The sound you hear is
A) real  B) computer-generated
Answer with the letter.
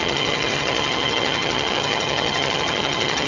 B